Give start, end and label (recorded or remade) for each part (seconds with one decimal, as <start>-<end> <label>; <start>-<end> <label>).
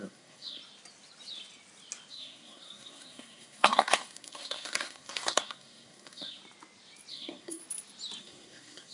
0.0-0.6 remade; 0.6-2.1 recorded; 2.1-6.4 remade; 6.4-7.1 recorded; 7.1-7.6 remade; 7.6-8.2 recorded; 8.2-8.9 remade